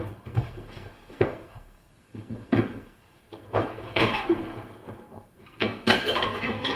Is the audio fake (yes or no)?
yes